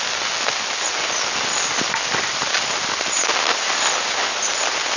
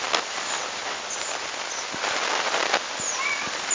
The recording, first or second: first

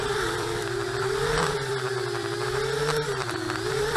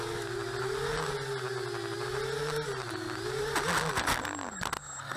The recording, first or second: second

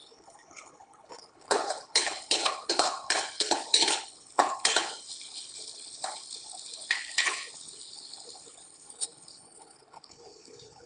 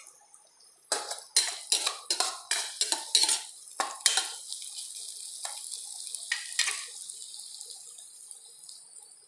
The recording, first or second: second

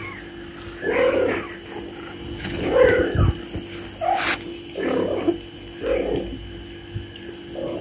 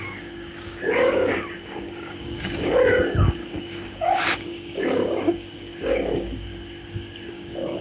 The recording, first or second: first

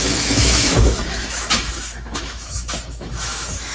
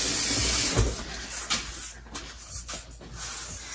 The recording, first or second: second